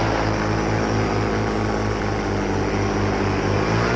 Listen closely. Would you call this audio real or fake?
real